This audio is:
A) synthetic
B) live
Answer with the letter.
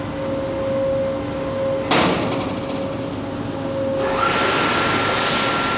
B